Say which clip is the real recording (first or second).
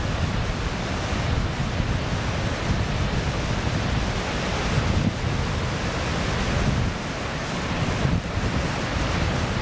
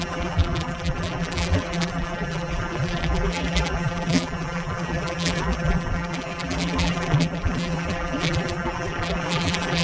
first